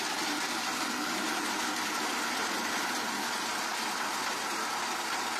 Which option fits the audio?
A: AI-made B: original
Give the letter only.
B